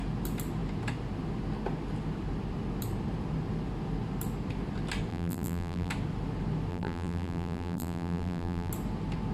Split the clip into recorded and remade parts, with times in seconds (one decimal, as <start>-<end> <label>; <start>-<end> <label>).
0.0-5.1 recorded; 5.1-5.9 remade; 5.9-6.7 recorded; 6.7-8.7 remade; 8.7-9.3 recorded